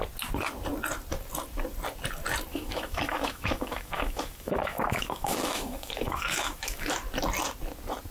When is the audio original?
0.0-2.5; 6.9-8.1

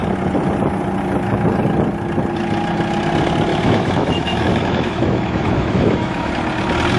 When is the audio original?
0.0-3.5; 6.3-7.0

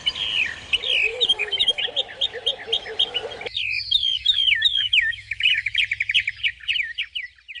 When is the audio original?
0.0-1.1; 1.8-3.5; 5.8-7.6